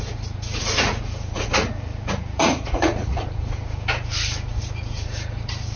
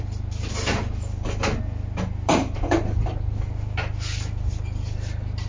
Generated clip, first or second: first